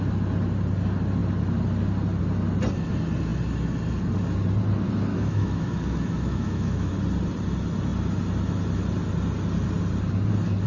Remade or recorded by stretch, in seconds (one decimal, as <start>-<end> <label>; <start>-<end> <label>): 0.0-5.1 recorded; 5.1-6.9 remade; 6.9-10.7 recorded